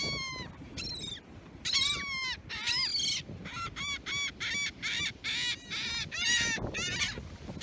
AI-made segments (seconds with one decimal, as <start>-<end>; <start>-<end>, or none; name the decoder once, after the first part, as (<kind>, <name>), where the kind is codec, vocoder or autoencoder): none